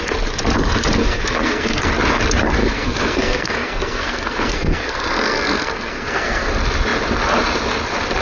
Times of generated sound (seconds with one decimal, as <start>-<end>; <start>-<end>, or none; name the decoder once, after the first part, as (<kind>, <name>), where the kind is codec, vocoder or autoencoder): 1.0-1.9 (codec, SNAC); 2.6-6.5